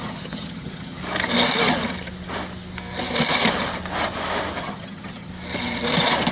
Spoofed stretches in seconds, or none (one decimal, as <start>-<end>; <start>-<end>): 0.0-1.0; 4.6-5.3